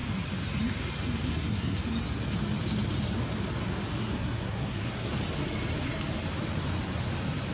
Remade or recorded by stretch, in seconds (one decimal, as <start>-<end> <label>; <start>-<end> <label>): 0.0-1.3 recorded; 1.3-1.8 remade; 1.8-4.0 recorded; 4.0-5.1 remade; 5.1-7.5 recorded